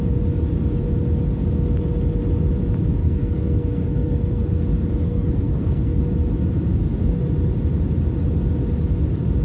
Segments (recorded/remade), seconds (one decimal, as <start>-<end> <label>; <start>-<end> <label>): 0.0-3.0 recorded; 3.0-4.6 remade; 4.6-5.0 recorded; 5.0-6.0 remade; 6.0-9.4 recorded